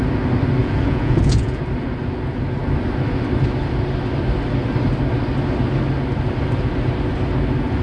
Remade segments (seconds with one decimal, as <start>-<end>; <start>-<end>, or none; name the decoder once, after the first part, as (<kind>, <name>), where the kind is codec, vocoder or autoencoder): 0.6-1.6 (vocoder, Vocos)